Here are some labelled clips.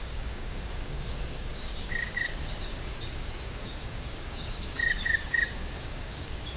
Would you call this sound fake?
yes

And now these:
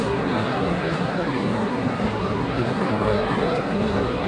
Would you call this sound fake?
yes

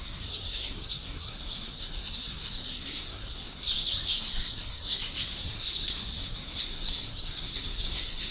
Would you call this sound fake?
yes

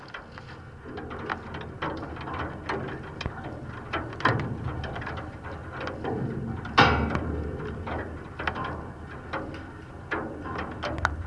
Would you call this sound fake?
no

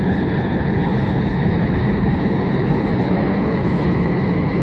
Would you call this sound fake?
yes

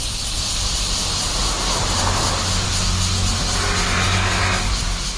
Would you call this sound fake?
no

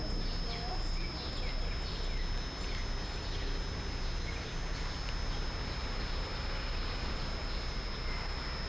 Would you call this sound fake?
no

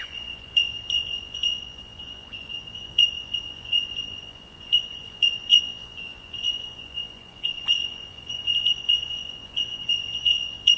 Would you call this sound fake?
yes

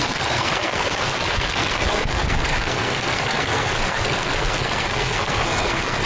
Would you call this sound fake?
yes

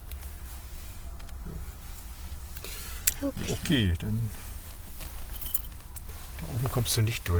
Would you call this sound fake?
no